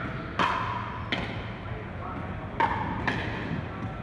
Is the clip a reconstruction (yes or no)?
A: no